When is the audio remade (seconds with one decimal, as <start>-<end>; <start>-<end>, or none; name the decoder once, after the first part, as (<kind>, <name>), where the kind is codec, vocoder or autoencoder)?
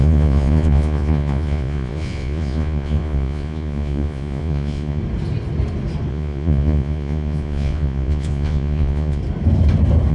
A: 0.0-5.0 (vocoder, Vocos); 6.1-9.2